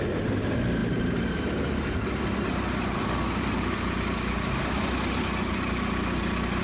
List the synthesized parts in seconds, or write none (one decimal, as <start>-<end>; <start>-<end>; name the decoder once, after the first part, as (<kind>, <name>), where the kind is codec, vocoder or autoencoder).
none